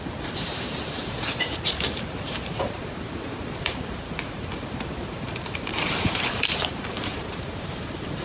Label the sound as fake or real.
fake